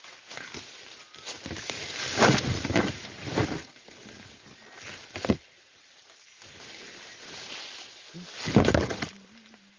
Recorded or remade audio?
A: recorded